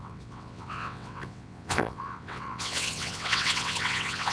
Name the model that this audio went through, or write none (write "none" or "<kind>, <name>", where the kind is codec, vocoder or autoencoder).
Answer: vocoder, WaveNeXt